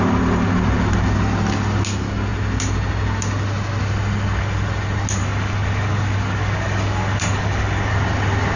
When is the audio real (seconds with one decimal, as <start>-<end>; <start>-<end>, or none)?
0.0-5.2; 7.9-8.6